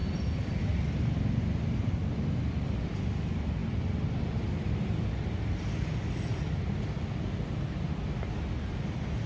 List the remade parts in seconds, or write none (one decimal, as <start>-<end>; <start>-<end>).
none